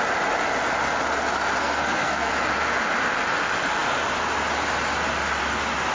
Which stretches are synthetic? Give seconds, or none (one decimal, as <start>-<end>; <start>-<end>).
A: 1.6-2.3